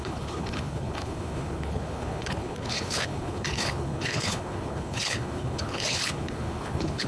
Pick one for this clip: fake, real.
fake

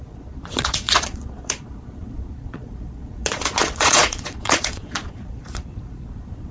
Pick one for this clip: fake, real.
fake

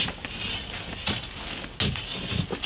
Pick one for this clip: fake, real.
real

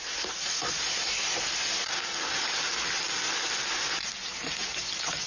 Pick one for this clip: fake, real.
real